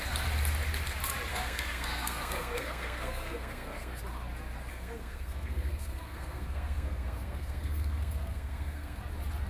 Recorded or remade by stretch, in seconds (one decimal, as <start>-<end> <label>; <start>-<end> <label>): 0.0-1.3 recorded; 1.3-4.0 remade; 4.0-4.7 recorded; 4.7-9.0 remade; 9.0-9.5 recorded